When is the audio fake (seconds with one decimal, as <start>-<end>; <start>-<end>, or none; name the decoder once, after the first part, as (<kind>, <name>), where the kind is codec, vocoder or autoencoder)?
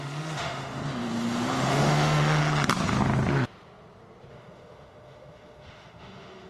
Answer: 0.0-0.8 (autoencoder, DAC-VAE); 1.7-2.4; 4.3-6.5